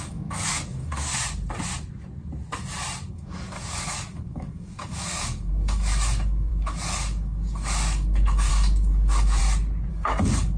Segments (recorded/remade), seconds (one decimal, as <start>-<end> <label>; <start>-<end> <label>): 0.0-1.1 remade; 1.1-3.1 recorded; 3.1-9.4 remade; 9.4-9.9 recorded; 9.9-10.6 remade